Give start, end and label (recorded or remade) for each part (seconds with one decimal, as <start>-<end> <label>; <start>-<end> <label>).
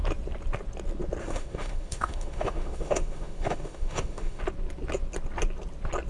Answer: 0.0-1.2 recorded; 1.2-4.4 remade; 4.4-6.1 recorded